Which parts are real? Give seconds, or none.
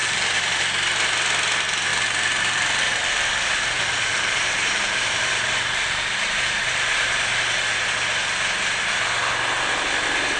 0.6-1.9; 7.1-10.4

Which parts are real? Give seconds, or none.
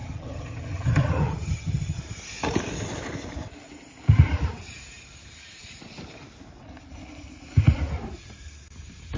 2.0-9.2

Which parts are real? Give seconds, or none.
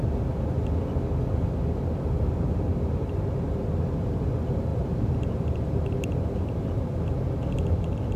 0.0-8.2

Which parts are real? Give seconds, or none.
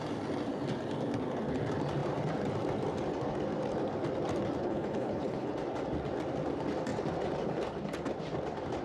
0.0-4.6; 5.5-8.8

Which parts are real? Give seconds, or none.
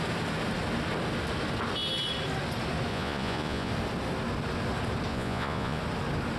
0.0-2.9; 3.7-5.1; 5.8-6.4